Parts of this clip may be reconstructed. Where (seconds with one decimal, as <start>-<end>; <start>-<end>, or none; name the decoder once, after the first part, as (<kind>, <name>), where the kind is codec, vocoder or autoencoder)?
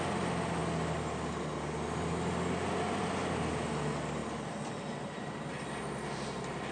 none